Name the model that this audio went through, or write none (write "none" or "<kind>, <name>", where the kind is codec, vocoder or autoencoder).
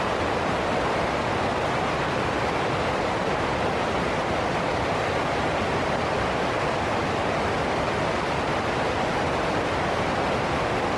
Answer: none